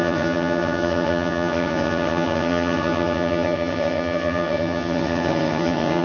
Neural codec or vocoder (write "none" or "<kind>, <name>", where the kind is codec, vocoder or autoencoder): vocoder, HiFi-GAN